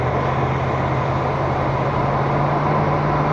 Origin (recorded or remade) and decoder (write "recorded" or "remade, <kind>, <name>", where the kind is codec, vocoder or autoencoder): recorded